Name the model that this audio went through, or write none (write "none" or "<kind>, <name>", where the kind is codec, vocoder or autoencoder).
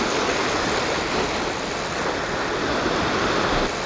none